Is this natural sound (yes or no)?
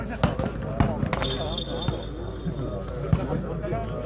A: yes